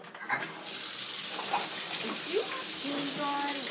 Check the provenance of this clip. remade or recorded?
recorded